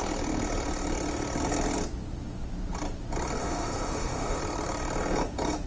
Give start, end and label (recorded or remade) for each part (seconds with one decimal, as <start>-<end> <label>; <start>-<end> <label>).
0.0-3.4 recorded; 3.4-4.4 remade; 4.4-5.7 recorded